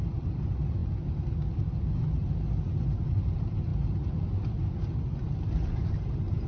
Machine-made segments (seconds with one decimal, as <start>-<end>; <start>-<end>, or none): none